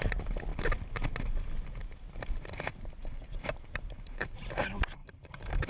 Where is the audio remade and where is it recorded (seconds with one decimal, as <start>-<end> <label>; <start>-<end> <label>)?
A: 0.0-3.0 recorded; 3.0-4.5 remade; 4.5-5.0 recorded; 5.0-5.7 remade